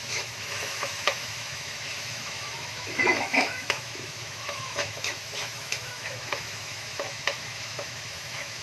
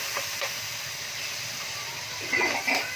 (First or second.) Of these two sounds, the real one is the second